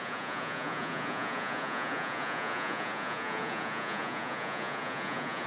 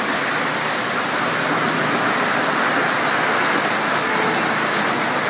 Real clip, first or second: second